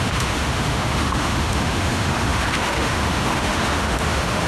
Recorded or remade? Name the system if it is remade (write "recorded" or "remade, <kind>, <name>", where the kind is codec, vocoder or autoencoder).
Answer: remade, autoencoder, DAC-VAE